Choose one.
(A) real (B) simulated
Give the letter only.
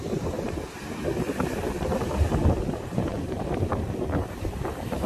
B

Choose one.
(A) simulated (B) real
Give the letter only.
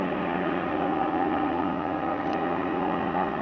A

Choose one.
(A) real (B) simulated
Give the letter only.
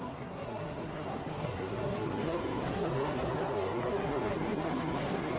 B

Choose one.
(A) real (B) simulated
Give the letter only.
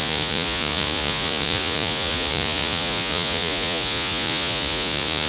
B